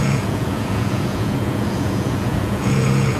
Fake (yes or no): yes